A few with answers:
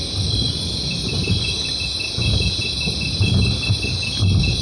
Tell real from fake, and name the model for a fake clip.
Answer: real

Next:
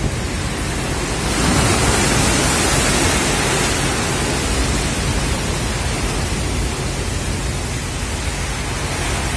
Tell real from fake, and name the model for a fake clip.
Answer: real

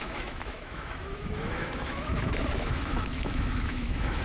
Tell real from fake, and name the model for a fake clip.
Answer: fake, autoencoder, DAC-VAE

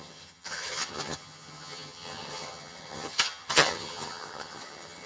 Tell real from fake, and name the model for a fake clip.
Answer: fake, vocoder, HiFi-GAN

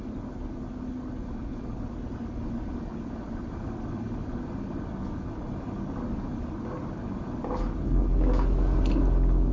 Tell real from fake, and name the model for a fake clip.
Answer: real